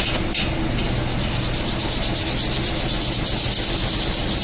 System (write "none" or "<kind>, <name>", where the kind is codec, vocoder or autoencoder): none